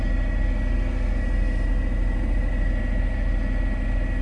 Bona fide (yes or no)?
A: yes